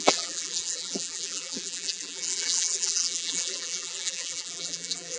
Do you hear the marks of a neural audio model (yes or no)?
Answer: yes